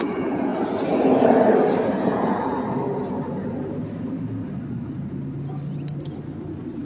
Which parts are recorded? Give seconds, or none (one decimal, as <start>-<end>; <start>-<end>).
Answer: 0.5-1.9; 2.5-6.8